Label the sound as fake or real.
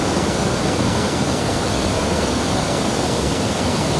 fake